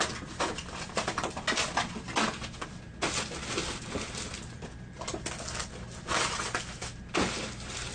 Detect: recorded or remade recorded